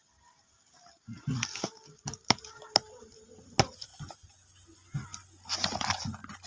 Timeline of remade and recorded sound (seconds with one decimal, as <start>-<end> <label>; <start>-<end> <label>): 0.0-6.5 recorded